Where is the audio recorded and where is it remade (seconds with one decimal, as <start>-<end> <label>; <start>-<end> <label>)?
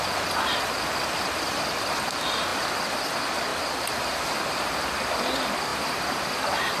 0.0-5.7 recorded; 5.7-6.8 remade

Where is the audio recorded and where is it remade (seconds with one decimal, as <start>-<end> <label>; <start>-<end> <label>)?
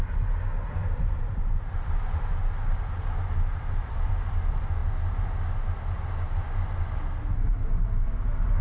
0.0-0.8 recorded; 0.8-2.3 remade; 2.3-3.5 recorded; 3.5-4.1 remade; 4.1-8.6 recorded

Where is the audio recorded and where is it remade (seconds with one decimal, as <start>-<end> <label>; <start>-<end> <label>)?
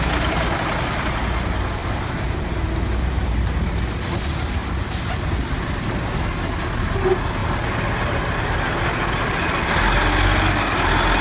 0.0-1.8 recorded; 1.8-3.3 remade; 3.3-11.2 recorded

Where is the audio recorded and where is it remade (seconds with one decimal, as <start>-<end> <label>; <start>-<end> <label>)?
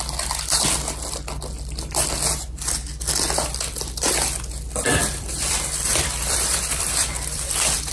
0.0-5.0 recorded; 5.0-7.9 remade